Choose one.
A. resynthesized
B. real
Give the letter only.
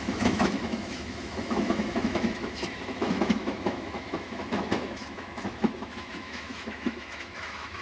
A